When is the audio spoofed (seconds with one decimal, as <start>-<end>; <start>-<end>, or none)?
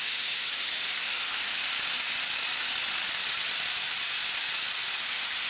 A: 0.0-1.7; 5.0-5.5